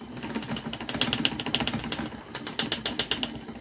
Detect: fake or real real